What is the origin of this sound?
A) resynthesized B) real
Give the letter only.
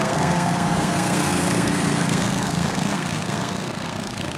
A